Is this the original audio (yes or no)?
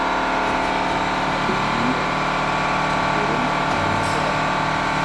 yes